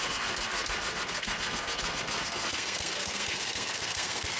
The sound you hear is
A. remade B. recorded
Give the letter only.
A